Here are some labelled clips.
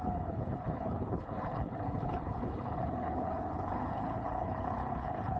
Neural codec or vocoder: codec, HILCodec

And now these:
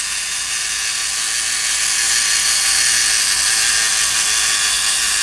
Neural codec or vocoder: none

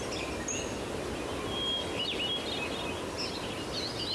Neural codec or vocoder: none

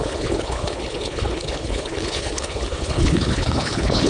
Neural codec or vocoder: codec, HILCodec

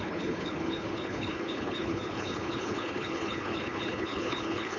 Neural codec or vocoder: codec, HILCodec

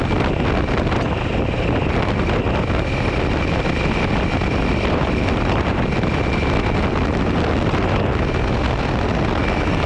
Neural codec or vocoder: none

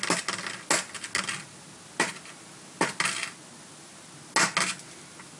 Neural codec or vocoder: none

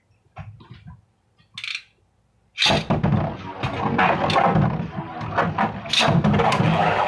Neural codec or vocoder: none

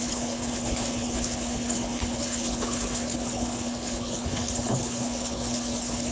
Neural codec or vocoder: codec, HILCodec